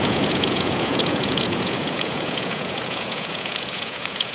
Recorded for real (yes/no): no